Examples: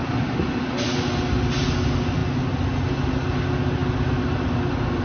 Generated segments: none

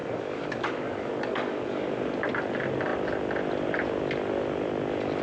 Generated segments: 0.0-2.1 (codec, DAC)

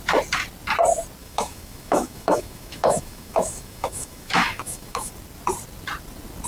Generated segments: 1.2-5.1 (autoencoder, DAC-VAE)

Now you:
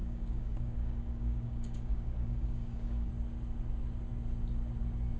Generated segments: 0.0-3.1 (codec, DAC)